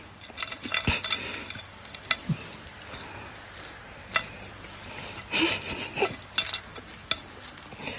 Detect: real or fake real